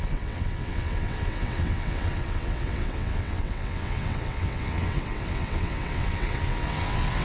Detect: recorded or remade remade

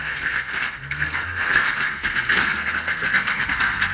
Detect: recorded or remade remade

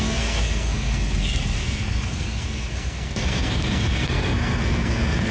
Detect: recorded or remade remade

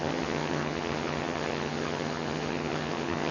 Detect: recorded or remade remade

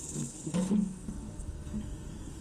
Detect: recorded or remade remade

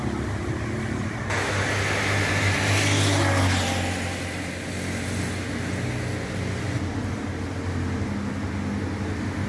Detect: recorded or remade recorded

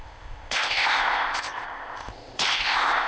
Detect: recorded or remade remade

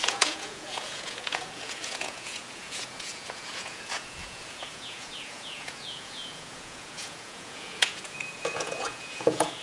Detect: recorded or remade remade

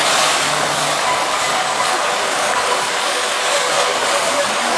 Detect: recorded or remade remade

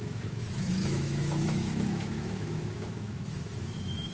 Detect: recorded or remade remade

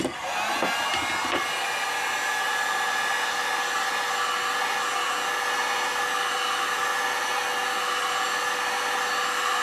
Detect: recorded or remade recorded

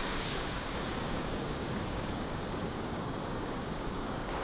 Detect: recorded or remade remade